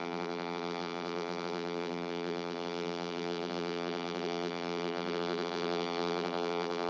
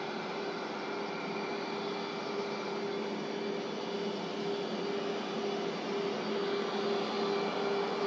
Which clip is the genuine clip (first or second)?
second